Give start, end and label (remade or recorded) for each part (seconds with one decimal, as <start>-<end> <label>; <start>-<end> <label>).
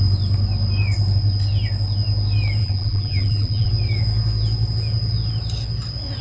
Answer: 0.0-2.6 recorded; 2.6-3.7 remade; 3.7-6.2 recorded